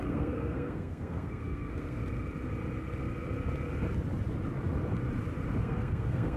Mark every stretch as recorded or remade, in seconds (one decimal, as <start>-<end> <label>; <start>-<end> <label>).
0.0-2.0 remade; 2.0-5.6 recorded; 5.6-6.4 remade